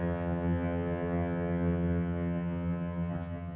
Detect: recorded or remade remade